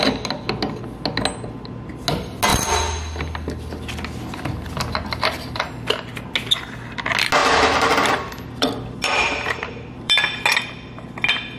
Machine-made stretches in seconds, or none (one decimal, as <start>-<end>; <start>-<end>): 2.5-3.9; 7.4-10.4